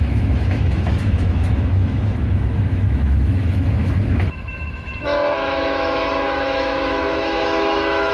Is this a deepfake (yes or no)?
yes